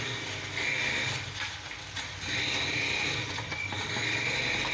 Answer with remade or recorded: recorded